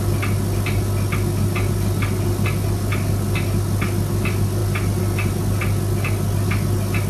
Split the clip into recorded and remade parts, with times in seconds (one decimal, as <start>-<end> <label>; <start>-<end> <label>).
0.0-7.1 recorded